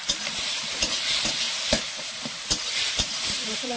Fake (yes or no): yes